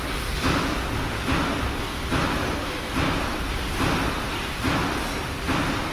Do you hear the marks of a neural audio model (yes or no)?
no